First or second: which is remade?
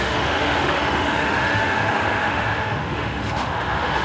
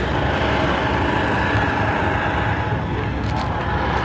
first